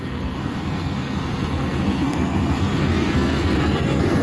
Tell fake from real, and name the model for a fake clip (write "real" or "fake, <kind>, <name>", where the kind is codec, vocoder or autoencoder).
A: fake, codec, SNAC